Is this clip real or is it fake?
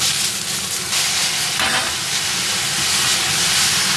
real